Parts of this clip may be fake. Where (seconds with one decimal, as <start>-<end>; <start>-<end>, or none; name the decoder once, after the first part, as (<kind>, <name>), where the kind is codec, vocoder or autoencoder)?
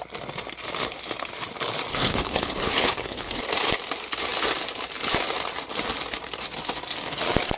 1.9-3.4 (codec, HILCodec)